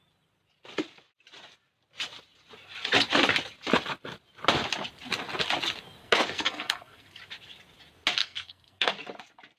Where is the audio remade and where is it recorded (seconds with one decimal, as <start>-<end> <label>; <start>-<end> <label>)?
0.0-6.0 recorded; 6.0-7.2 remade; 7.2-8.2 recorded; 8.2-8.9 remade; 8.9-9.6 recorded